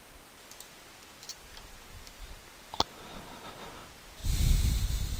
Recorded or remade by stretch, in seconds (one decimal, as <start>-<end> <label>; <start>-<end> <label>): 0.0-1.3 recorded; 1.3-2.9 remade; 2.9-5.2 recorded